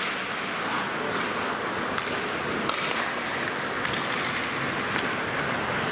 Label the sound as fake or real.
real